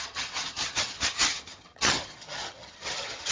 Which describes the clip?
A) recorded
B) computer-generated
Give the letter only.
B